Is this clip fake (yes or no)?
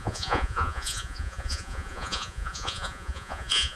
yes